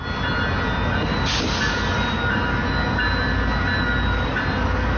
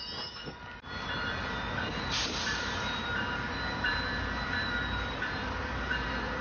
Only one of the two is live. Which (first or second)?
first